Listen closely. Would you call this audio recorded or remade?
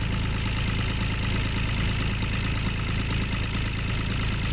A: recorded